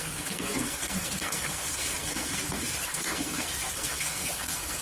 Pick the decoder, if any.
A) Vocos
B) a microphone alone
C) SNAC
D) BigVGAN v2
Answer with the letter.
C